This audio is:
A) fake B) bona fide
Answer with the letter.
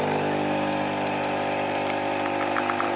B